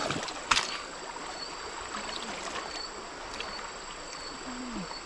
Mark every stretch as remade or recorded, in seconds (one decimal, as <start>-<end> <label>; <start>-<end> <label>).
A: 0.0-5.1 recorded